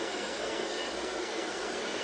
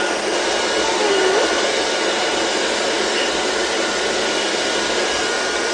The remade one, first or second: first